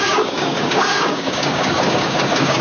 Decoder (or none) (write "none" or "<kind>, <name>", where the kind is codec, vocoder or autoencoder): codec, DAC